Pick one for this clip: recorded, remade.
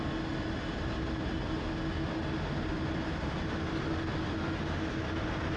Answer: recorded